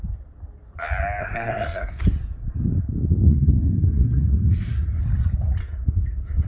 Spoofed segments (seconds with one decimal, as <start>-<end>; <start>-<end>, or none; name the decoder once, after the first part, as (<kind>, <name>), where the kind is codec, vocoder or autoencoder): 1.2-2.0 (codec, SNAC); 3.3-5.0; 5.6-6.5